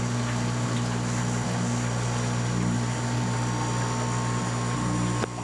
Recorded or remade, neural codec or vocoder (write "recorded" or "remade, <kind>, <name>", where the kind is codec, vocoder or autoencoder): recorded